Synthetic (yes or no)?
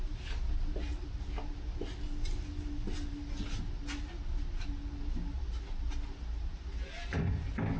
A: no